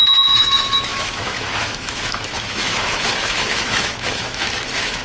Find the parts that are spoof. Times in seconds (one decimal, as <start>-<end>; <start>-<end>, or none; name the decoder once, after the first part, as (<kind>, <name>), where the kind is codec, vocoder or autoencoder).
0.0-5.0 (autoencoder, DAC-VAE)